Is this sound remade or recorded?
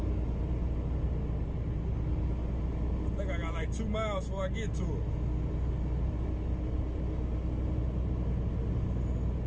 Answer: recorded